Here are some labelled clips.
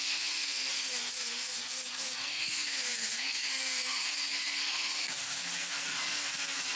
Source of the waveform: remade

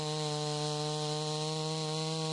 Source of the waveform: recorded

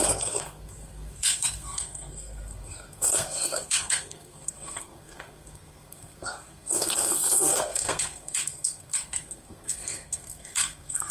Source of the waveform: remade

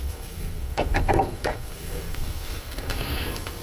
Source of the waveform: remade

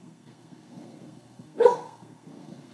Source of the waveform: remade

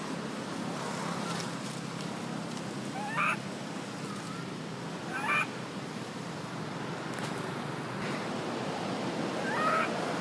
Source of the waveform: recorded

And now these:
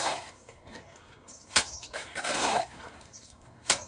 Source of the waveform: remade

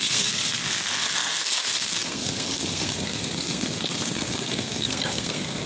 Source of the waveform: remade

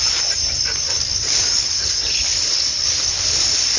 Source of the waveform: recorded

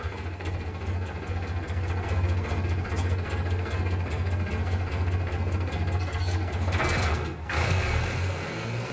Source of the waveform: remade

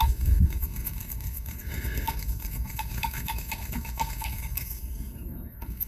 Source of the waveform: remade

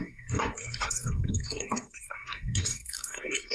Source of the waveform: remade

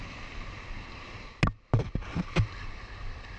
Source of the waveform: recorded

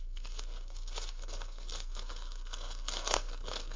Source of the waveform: remade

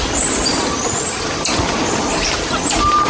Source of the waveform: recorded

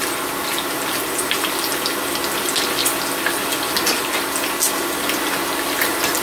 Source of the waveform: recorded